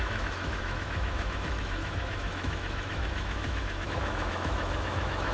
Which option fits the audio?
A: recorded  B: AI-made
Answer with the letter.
B